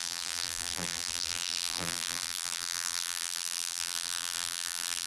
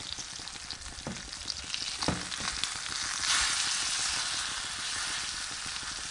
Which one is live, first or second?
second